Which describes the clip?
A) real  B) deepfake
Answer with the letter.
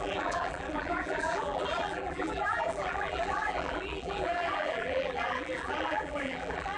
B